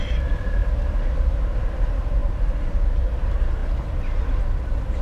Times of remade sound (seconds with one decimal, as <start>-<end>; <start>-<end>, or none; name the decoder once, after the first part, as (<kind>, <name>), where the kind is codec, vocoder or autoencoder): 0.0-3.6 (vocoder, BigVGAN v2); 4.4-5.0